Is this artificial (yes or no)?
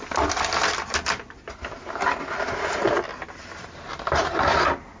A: no